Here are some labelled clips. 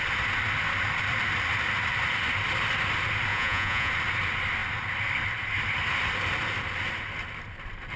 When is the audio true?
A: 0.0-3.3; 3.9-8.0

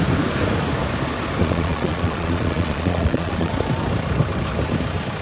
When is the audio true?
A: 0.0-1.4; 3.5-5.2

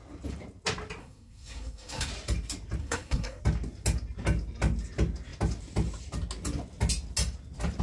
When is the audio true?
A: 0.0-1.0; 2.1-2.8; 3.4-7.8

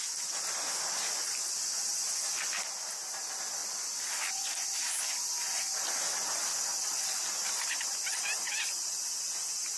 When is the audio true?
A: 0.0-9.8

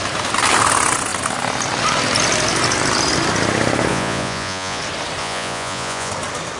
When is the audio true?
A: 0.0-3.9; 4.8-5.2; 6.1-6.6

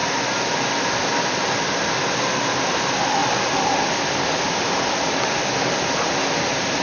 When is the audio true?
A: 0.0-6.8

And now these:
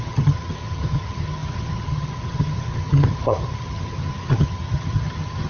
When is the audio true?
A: none

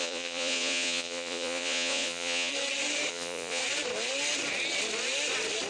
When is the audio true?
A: 2.5-3.1; 3.6-5.7